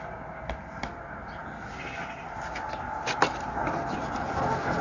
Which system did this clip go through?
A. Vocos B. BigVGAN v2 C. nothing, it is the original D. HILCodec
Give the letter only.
C